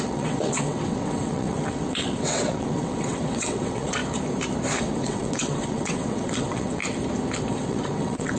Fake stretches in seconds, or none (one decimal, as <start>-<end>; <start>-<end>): 0.0-4.0; 4.8-6.8; 7.5-8.4

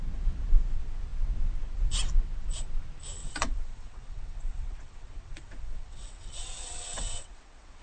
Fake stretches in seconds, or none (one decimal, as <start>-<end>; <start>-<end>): 3.2-7.8

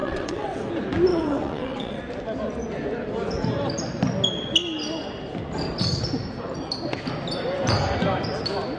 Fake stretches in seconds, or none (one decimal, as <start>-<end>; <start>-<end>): 0.0-0.7; 1.1-2.0

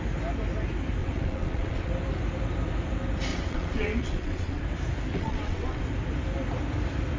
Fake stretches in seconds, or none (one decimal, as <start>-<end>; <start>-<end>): 1.0-1.9; 3.3-4.6; 5.1-5.8

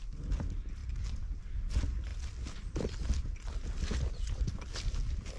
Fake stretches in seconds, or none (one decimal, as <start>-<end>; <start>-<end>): none

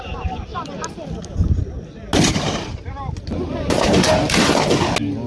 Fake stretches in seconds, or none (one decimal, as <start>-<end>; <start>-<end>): none